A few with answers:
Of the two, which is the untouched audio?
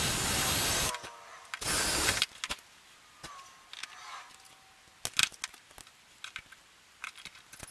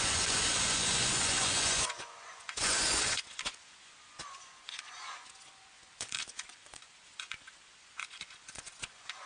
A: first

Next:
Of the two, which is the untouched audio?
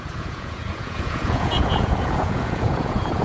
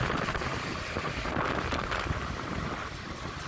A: second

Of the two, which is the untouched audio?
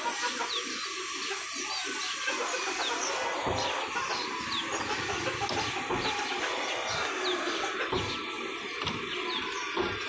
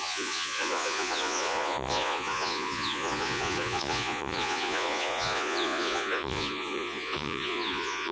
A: first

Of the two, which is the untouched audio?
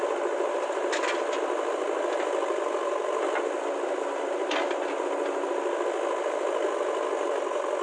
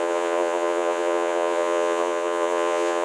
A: first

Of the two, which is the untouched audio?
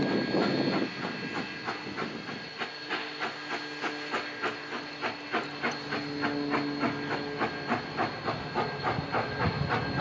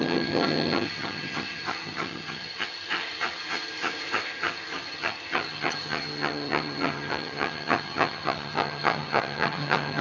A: first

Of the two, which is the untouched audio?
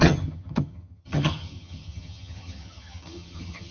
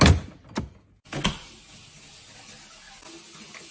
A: second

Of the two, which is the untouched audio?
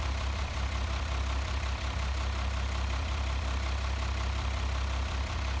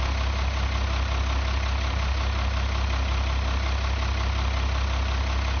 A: second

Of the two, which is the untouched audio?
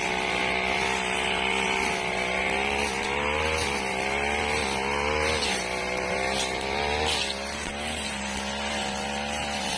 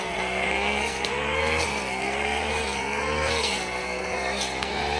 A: first